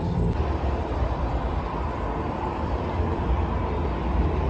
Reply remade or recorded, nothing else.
remade